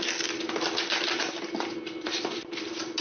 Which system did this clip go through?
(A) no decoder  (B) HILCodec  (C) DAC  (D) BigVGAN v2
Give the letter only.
D